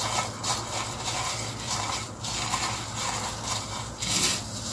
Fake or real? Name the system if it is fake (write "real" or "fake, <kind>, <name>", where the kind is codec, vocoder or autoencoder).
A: real